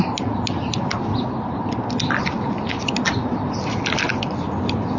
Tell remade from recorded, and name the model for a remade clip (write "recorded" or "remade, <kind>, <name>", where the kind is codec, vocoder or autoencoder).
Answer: recorded